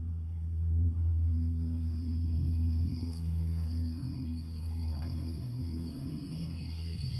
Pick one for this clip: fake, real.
fake